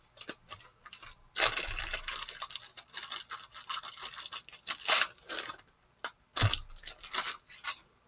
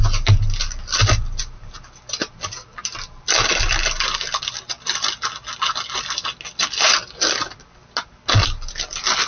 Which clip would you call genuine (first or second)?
second